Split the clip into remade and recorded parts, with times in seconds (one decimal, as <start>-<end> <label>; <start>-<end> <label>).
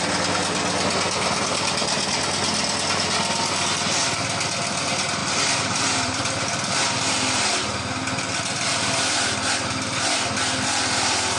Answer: 0.0-5.2 recorded; 5.2-6.4 remade; 6.4-11.4 recorded